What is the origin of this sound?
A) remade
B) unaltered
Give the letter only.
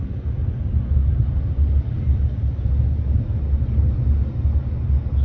B